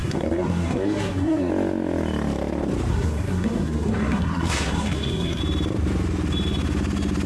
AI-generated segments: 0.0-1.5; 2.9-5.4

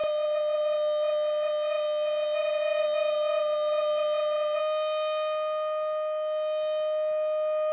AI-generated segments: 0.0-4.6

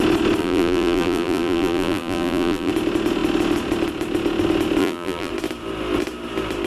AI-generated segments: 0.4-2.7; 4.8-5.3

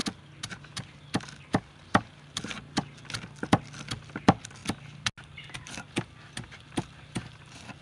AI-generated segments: none